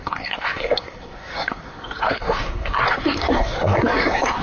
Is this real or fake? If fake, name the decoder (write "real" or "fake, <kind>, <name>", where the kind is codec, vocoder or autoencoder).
fake, codec, SNAC